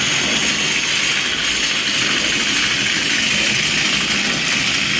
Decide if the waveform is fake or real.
real